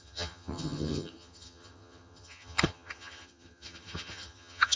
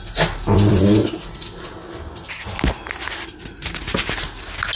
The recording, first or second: second